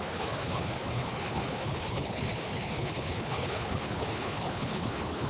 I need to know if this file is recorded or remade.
remade